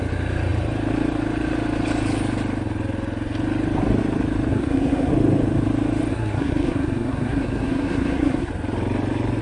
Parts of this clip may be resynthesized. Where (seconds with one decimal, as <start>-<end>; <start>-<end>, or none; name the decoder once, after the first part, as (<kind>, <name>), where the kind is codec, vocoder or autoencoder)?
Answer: 4.5-5.1 (codec, SNAC); 6.1-8.5